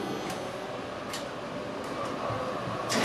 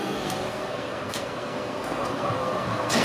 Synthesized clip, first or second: second